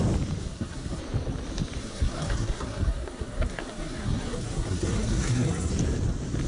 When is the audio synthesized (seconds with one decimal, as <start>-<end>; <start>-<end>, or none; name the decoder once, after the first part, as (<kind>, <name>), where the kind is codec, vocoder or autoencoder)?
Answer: 0.4-1.0 (codec, SNAC); 1.8-5.7